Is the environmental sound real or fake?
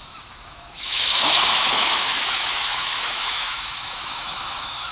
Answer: fake